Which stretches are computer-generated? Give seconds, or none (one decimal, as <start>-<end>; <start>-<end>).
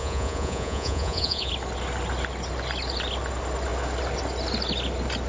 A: 0.0-1.5